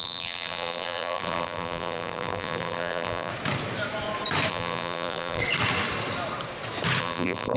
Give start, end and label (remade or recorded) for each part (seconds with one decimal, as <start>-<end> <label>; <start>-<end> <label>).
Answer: 0.0-3.3 remade; 3.3-4.5 recorded; 4.5-5.4 remade; 5.4-7.0 recorded; 7.0-7.6 remade

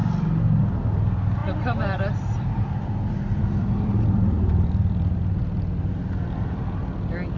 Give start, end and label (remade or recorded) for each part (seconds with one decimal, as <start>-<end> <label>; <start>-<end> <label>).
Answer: 0.0-1.4 recorded; 1.4-3.9 remade; 3.9-4.5 recorded; 4.5-5.2 remade; 5.2-7.4 recorded

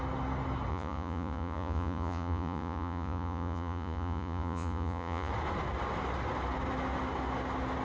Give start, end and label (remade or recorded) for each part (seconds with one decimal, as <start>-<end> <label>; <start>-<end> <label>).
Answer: 0.0-0.7 recorded; 0.7-5.3 remade; 5.3-7.8 recorded